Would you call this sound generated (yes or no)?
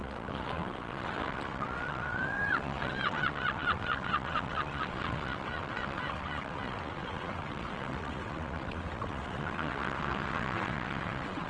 yes